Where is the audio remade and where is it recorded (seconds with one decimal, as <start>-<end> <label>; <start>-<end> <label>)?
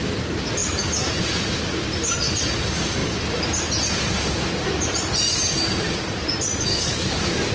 0.0-6.7 recorded; 6.7-7.5 remade